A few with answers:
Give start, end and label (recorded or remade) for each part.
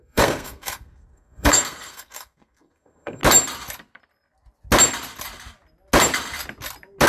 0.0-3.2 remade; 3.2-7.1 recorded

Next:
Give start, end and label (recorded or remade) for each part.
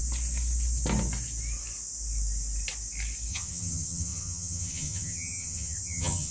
0.0-3.3 recorded; 3.3-6.3 remade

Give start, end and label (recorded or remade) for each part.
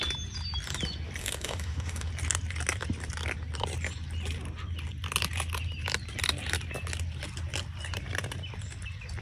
0.0-1.2 recorded; 1.2-2.1 remade; 2.1-9.2 recorded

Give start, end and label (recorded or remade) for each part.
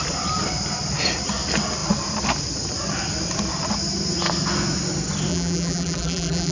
0.0-5.3 recorded; 5.3-6.5 remade